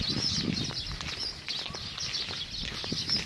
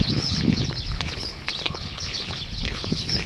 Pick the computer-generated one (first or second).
second